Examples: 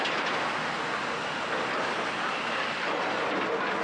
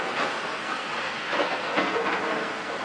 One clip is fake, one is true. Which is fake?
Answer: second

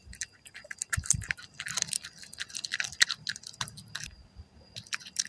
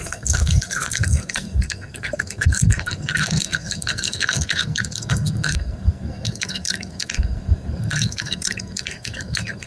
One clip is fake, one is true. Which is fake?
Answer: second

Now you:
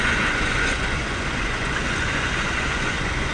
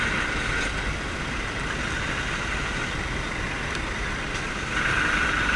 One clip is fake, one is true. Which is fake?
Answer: first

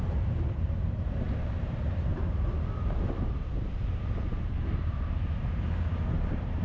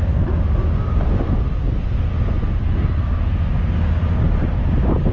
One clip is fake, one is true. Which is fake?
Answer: first